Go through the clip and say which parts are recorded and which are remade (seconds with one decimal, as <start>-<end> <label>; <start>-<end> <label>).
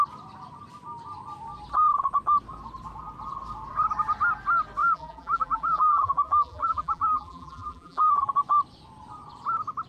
0.0-4.8 recorded; 4.8-8.3 remade; 8.3-9.9 recorded